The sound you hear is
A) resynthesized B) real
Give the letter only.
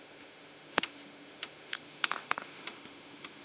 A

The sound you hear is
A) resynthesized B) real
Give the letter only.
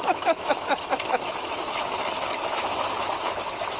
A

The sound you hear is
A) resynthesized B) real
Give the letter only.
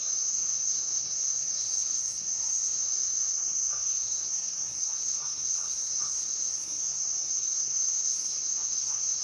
A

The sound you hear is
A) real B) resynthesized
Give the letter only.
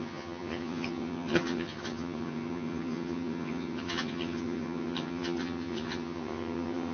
B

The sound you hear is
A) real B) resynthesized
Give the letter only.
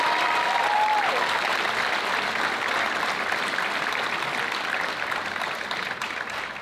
A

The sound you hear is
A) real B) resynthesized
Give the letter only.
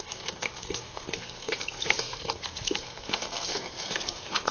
B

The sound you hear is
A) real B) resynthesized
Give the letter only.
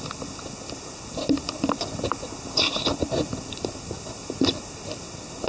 A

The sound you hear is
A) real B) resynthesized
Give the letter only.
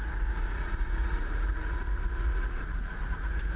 B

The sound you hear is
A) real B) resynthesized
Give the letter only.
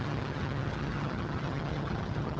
B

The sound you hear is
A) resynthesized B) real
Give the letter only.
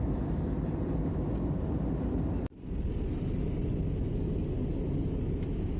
B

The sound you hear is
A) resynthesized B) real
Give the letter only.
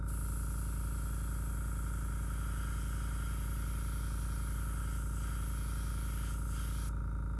B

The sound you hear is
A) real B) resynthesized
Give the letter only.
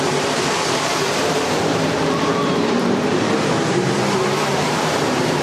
B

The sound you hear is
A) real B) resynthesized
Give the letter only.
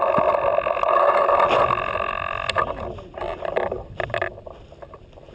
A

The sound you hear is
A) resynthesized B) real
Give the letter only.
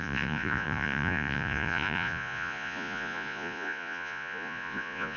A